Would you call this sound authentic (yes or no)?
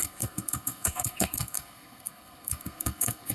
no